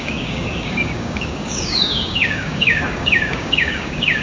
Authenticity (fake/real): fake